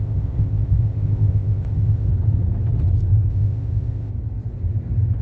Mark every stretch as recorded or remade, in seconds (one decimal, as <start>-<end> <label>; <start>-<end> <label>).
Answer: 0.0-2.1 remade; 2.1-3.3 recorded; 3.3-4.1 remade; 4.1-5.2 recorded